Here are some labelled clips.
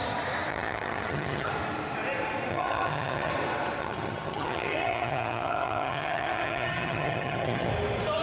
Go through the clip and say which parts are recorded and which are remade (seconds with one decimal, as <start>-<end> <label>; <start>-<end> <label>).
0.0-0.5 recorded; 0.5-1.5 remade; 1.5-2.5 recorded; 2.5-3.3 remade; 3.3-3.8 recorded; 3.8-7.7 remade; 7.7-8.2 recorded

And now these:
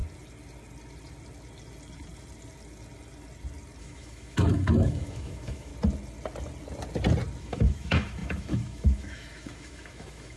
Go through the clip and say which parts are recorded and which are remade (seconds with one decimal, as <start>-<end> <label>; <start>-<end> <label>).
0.0-3.8 recorded; 3.8-5.7 remade; 5.7-7.4 recorded; 7.4-10.4 remade

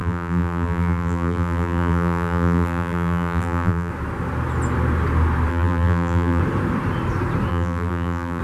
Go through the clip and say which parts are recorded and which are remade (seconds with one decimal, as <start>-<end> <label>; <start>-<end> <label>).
0.0-3.9 remade; 3.9-5.5 recorded; 5.5-6.4 remade; 6.4-7.5 recorded; 7.5-8.4 remade

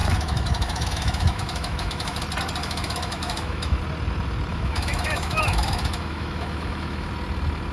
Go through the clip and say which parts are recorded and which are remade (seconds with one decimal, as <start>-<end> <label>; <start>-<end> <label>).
0.0-2.2 remade; 2.2-2.6 recorded; 2.6-3.8 remade; 3.8-4.5 recorded; 4.5-7.1 remade; 7.1-7.7 recorded

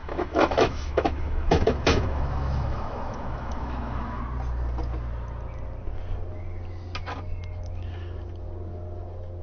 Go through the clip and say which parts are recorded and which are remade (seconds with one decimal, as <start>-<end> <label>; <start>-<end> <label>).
0.0-4.2 remade; 4.2-9.4 recorded